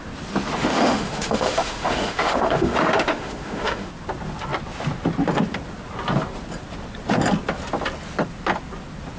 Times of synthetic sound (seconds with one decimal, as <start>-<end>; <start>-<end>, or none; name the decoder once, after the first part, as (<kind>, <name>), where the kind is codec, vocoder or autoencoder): 0.6-3.9 (autoencoder, DAC-VAE)